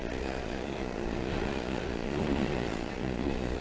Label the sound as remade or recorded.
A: remade